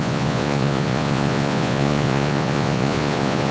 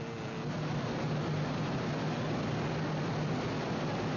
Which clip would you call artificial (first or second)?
first